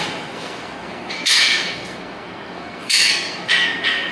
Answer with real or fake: fake